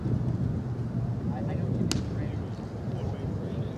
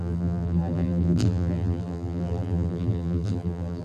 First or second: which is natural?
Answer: first